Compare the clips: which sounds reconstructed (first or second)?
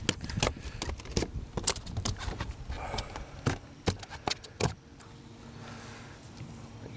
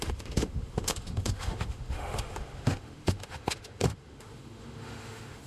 second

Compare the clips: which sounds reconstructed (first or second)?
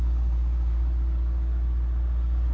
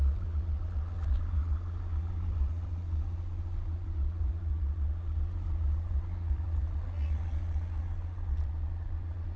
second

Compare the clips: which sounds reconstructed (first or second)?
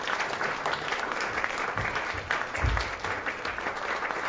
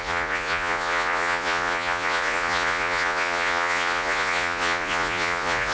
second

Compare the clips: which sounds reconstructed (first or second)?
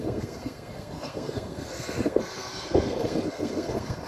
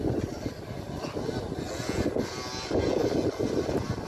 first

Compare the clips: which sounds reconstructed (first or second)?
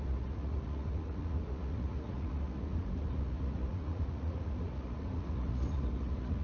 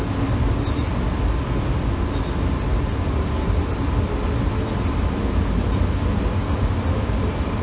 first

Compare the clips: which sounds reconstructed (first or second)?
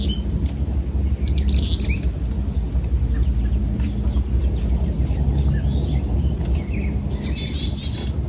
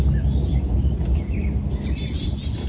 second